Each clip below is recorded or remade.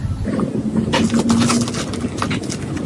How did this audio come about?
recorded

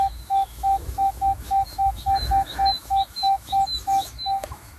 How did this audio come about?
remade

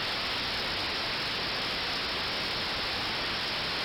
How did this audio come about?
recorded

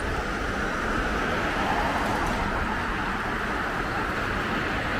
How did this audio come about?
recorded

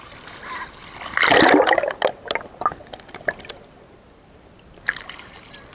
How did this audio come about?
recorded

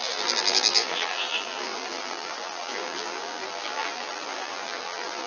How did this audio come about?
remade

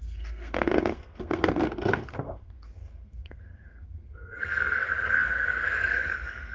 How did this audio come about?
remade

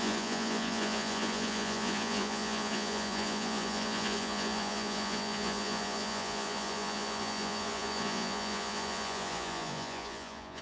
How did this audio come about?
remade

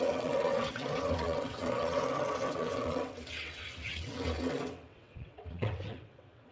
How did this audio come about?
remade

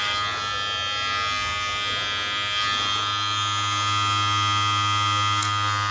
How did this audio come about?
recorded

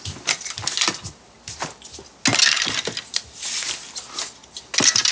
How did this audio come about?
recorded